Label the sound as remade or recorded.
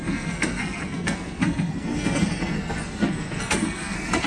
remade